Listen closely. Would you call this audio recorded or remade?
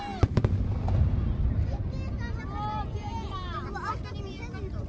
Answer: recorded